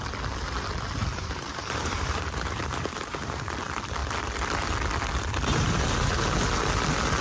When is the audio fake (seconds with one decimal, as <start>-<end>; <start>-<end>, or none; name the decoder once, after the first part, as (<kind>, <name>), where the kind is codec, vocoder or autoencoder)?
1.0-3.6 (vocoder, BigVGAN v2)